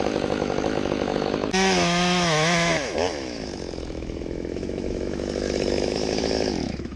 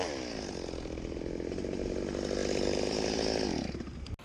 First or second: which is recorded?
second